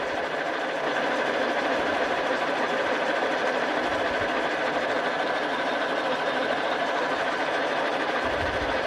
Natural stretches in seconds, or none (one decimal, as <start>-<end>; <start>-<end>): 0.0-0.9; 4.0-5.5; 7.3-7.9